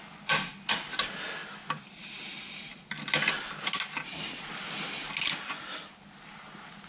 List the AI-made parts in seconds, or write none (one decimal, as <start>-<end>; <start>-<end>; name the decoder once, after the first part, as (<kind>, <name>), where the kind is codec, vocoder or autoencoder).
none